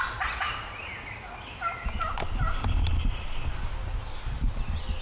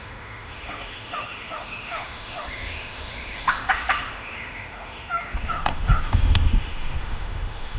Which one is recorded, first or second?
first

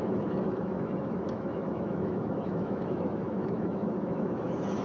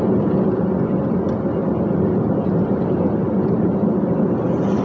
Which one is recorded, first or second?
second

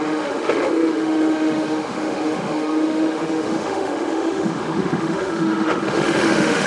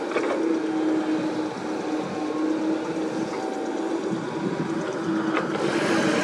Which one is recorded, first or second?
second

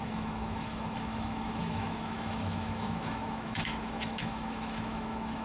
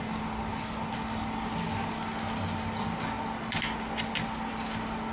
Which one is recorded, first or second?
second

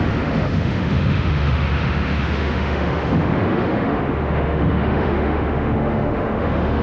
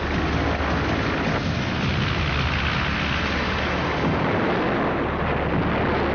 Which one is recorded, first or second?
second